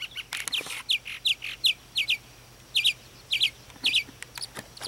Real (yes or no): yes